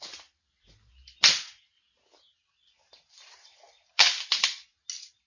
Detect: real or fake real